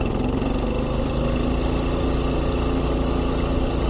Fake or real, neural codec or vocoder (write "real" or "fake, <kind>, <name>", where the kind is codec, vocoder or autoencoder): real